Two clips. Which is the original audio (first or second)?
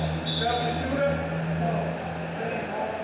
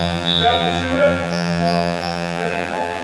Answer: first